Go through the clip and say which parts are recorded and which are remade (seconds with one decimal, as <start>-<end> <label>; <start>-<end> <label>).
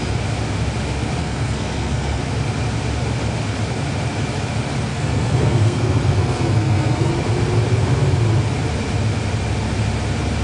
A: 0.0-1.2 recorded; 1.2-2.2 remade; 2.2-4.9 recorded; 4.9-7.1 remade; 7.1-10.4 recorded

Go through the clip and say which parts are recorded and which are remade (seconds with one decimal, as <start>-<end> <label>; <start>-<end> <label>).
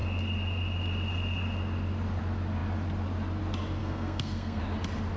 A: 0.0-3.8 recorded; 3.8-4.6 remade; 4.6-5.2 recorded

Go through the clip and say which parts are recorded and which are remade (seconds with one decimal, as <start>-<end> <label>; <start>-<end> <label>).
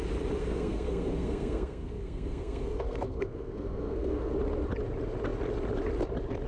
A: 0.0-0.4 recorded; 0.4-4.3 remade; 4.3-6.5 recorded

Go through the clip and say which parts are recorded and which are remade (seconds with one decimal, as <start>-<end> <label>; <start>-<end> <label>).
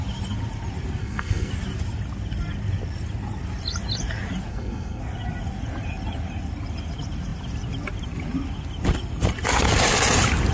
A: 0.0-1.0 recorded; 1.0-1.5 remade; 1.5-4.5 recorded; 4.5-5.0 remade; 5.0-10.5 recorded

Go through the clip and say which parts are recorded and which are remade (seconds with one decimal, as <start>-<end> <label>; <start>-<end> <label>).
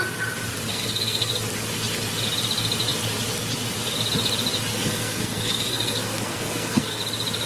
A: 0.0-0.7 recorded; 0.7-1.3 remade; 1.3-4.7 recorded; 4.7-7.0 remade; 7.0-7.5 recorded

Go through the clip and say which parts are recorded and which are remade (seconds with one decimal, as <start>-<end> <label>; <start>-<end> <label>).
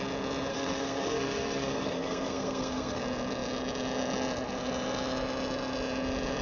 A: 0.0-0.5 recorded; 0.5-3.0 remade; 3.0-6.4 recorded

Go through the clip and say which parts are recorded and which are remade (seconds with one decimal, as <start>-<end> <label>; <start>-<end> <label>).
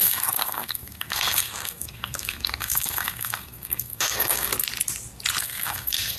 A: 0.0-4.5 remade; 4.5-5.4 recorded; 5.4-6.2 remade